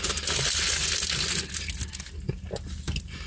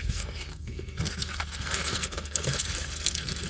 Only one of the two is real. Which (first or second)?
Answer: first